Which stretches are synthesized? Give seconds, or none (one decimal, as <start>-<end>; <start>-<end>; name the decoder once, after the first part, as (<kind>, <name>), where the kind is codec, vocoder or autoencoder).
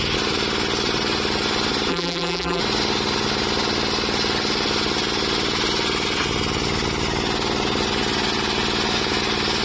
1.9-2.6 (vocoder, BigVGAN v2)